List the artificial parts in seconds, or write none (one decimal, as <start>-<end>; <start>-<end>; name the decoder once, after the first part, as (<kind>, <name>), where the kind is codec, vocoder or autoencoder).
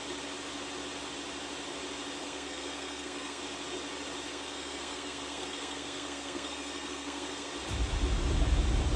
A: 2.2-3.4 (codec, SNAC); 4.3-7.5